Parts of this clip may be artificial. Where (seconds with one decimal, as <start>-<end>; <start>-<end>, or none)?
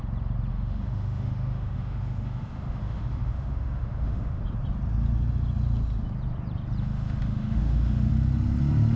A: 0.5-4.4; 6.8-8.1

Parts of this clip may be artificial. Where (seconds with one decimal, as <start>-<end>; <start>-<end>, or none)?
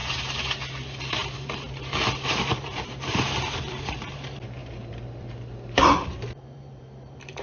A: 1.0-7.4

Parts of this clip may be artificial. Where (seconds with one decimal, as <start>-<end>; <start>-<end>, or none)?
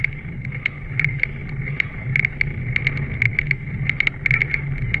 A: none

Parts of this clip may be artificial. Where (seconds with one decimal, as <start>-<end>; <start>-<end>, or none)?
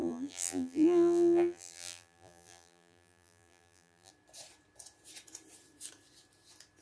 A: 0.0-4.1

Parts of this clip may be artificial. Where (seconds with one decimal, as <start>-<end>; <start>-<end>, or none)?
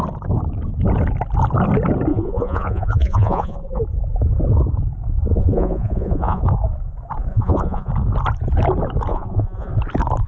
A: 2.1-3.8; 5.3-6.4; 7.3-7.9; 9.1-9.7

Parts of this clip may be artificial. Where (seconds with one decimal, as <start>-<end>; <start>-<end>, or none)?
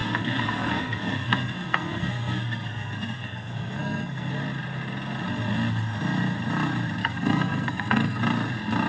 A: 0.0-4.3; 7.0-8.2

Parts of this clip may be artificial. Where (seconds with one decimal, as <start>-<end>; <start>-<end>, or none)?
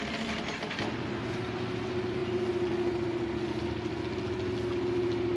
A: none